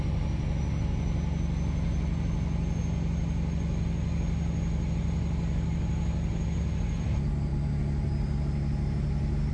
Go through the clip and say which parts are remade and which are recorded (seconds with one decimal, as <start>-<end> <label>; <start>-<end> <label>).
0.0-9.5 recorded